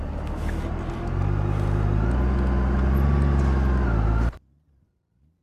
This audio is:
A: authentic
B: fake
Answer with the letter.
A